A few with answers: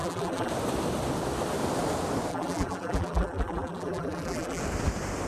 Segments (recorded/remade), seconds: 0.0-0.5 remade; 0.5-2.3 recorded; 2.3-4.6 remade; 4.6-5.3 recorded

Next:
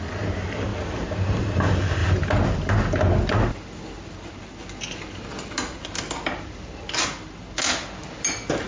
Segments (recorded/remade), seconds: 0.0-0.7 recorded; 0.7-1.4 remade; 1.4-2.0 recorded; 2.0-2.7 remade; 2.7-8.7 recorded

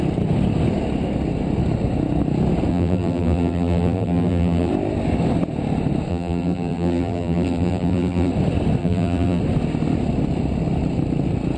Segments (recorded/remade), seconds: 0.0-2.7 recorded; 2.7-4.7 remade; 4.7-6.1 recorded; 6.1-8.3 remade; 8.3-8.8 recorded; 8.8-9.4 remade; 9.4-11.6 recorded

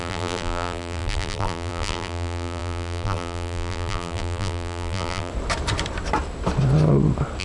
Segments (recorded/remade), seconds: 0.0-5.3 remade; 5.3-7.4 recorded

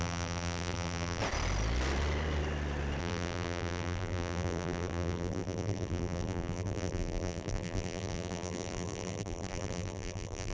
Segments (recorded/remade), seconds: 0.0-1.2 remade; 1.2-3.0 recorded; 3.0-10.5 remade

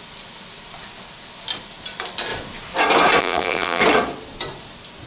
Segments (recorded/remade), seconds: 0.0-3.2 recorded; 3.2-3.8 remade; 3.8-5.1 recorded

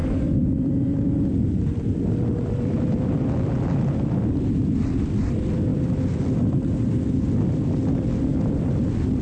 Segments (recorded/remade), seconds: 0.0-3.5 remade; 3.5-5.7 recorded; 5.7-7.4 remade; 7.4-8.3 recorded; 8.3-9.2 remade

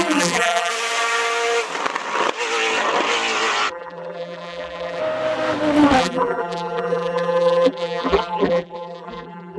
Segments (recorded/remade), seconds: 0.0-0.7 remade; 0.7-3.7 recorded; 3.7-5.0 remade; 5.0-6.0 recorded; 6.0-9.6 remade